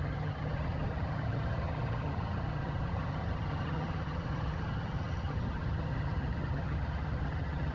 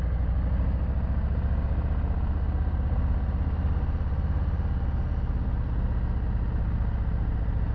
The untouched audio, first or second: second